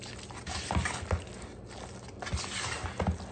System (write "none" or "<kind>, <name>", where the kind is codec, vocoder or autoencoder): none